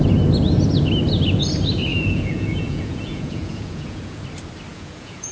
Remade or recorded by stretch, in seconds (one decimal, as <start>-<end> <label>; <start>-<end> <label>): 0.0-1.9 recorded; 1.9-4.2 remade; 4.2-4.7 recorded; 4.7-5.3 remade